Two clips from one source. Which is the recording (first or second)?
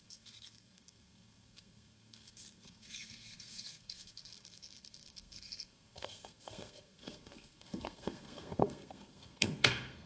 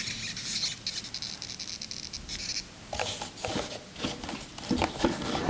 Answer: second